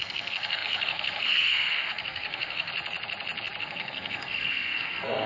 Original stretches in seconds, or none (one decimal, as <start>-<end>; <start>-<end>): 2.7-3.6

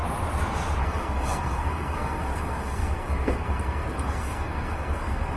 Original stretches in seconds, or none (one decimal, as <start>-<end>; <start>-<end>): 0.0-0.8

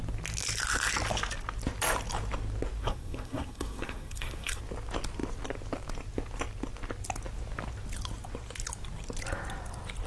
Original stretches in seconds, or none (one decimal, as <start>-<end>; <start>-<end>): 0.0-2.8; 4.6-10.1

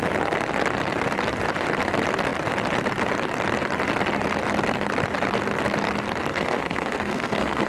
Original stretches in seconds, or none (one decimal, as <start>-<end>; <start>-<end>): 0.0-6.3

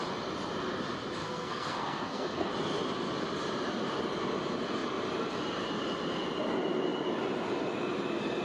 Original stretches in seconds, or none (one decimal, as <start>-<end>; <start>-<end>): 0.0-1.2; 2.5-8.4

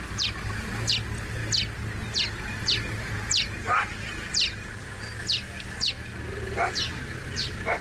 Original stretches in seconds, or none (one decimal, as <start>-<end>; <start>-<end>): 0.0-7.8